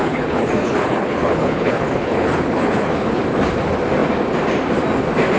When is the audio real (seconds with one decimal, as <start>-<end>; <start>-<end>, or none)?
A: 3.2-5.4